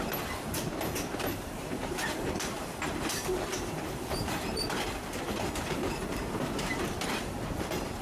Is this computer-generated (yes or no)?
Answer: yes